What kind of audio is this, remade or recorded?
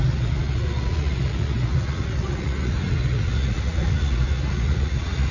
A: remade